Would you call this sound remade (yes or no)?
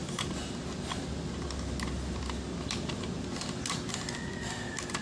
no